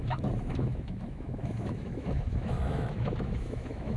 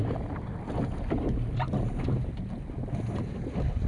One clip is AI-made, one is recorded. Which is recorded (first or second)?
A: second